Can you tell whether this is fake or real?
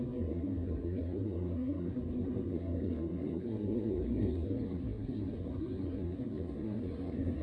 fake